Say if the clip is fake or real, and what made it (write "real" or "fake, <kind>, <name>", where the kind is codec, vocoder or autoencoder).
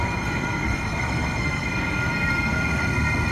fake, codec, SNAC